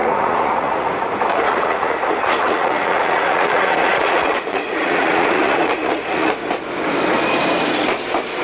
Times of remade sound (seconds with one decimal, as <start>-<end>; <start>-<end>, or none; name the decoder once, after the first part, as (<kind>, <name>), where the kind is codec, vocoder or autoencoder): 0.0-0.9 (vocoder, Vocos); 1.3-6.3